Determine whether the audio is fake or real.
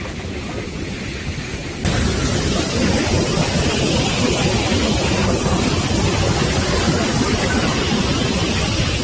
real